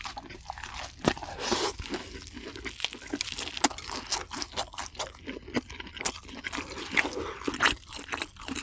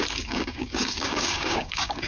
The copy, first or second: second